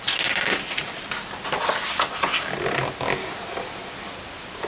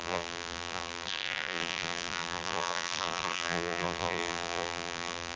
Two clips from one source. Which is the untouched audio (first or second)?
first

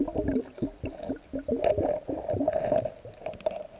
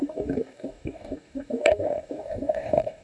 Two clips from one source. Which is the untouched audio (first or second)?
first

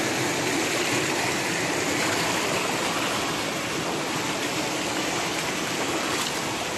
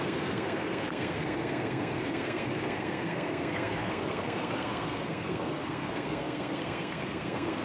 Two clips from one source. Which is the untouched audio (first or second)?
first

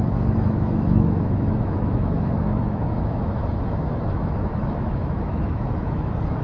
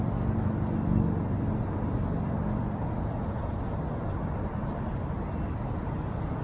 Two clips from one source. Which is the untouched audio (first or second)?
second